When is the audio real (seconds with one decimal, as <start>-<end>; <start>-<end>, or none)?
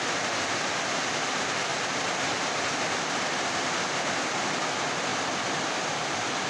0.0-6.5